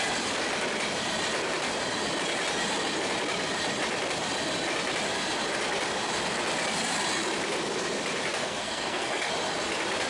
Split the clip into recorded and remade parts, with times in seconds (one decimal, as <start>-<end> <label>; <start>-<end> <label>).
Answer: 0.0-8.4 recorded; 8.4-9.3 remade; 9.3-10.1 recorded